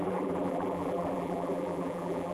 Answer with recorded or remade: remade